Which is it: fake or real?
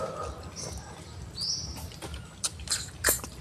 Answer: real